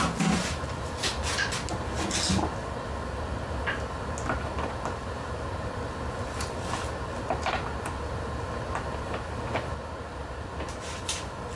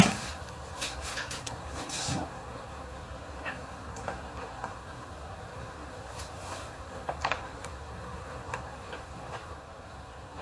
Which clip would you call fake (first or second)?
second